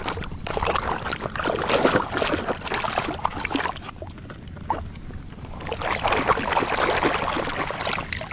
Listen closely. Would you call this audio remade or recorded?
recorded